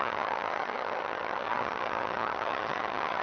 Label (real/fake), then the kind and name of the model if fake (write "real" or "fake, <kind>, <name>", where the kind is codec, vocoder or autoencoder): fake, vocoder, HiFi-GAN